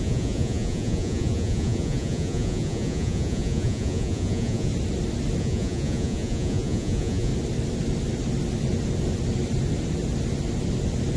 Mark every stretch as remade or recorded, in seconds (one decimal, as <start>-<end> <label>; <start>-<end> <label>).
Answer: 0.0-4.7 remade; 4.7-5.4 recorded; 5.4-7.3 remade; 7.3-11.2 recorded